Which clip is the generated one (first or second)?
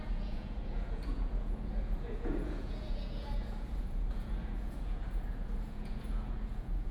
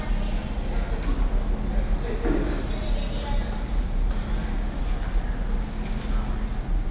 first